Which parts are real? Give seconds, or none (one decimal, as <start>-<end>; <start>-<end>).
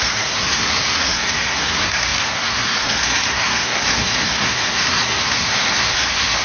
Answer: none